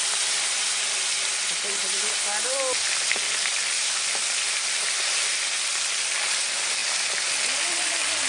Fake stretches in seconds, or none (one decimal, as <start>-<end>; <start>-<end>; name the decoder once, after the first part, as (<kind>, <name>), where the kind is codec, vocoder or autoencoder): none